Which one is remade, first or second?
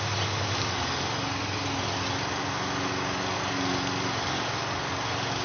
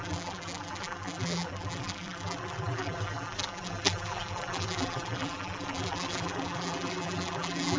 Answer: second